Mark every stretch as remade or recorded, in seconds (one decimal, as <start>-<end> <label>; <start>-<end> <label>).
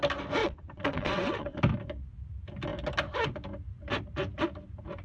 0.0-0.4 recorded; 0.4-1.6 remade; 1.6-5.0 recorded